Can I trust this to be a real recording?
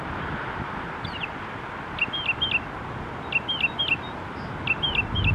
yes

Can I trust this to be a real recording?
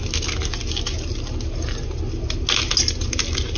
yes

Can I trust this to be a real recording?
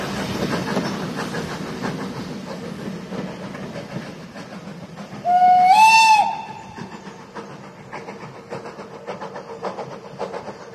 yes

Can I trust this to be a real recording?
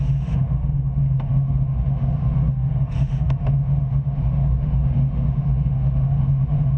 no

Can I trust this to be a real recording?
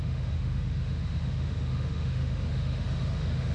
no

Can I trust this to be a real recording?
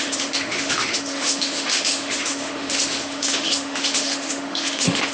no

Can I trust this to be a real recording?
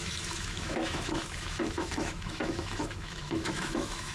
no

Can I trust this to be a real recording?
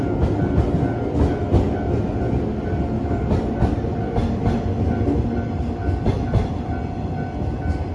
yes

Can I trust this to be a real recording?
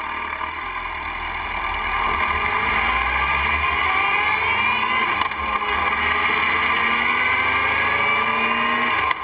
yes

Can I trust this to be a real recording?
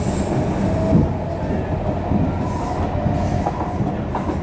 yes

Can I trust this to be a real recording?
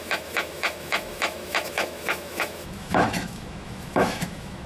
no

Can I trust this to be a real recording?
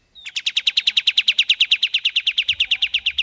yes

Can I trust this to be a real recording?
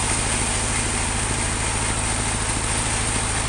yes